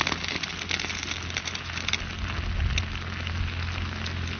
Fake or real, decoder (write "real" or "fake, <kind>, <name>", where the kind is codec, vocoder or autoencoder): real